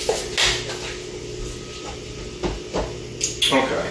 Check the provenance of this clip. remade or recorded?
recorded